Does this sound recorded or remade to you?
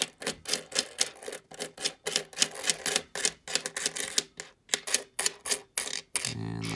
recorded